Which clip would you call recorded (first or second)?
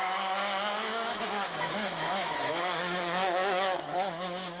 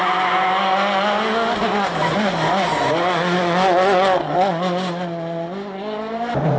second